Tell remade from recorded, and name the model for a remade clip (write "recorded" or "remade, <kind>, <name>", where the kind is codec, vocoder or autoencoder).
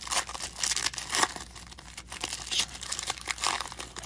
recorded